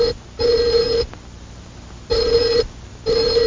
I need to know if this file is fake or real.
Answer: real